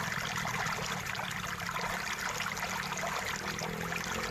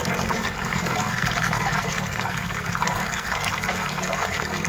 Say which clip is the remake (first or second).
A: second